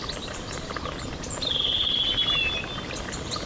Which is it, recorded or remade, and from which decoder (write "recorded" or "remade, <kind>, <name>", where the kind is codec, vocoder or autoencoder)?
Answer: recorded